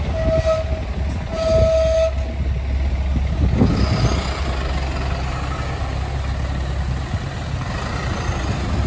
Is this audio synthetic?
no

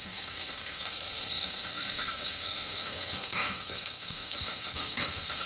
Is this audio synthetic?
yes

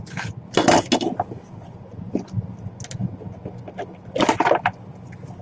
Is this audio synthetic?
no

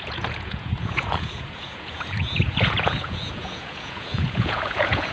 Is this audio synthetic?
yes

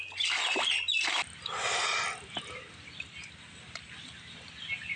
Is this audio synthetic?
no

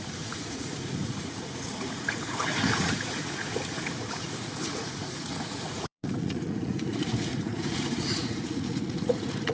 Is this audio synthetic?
yes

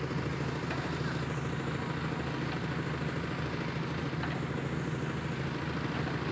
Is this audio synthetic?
no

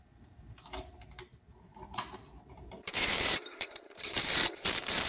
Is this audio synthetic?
yes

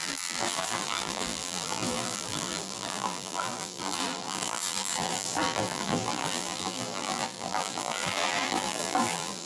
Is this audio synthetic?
yes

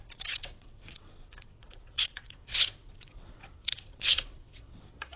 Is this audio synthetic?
yes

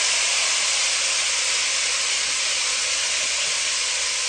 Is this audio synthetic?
no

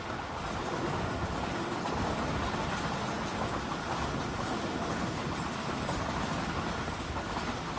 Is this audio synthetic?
no